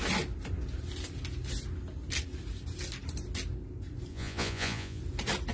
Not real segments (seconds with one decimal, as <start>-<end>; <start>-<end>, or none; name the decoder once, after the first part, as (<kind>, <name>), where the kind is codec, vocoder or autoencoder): 4.1-5.0 (vocoder, Vocos)